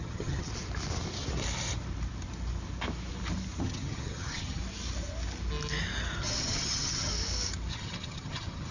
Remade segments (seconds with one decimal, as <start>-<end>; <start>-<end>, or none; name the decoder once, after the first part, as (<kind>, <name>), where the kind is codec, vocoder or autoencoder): 0.0-0.5 (vocoder, HiFi-GAN); 3.6-4.6; 6.2-7.1; 7.7-8.7